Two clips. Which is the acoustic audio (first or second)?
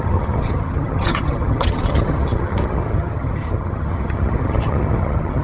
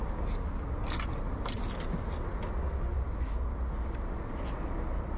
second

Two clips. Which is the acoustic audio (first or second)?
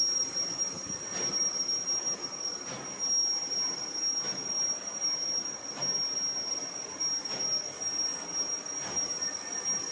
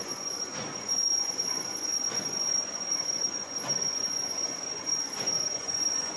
first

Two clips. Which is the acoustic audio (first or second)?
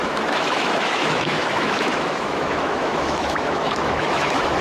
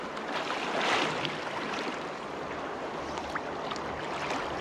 second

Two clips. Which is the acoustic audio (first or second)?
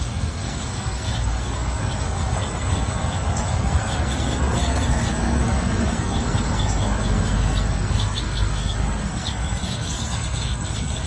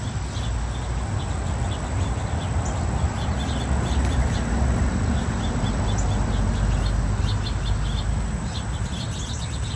second